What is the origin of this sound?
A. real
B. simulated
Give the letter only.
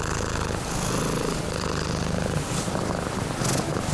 A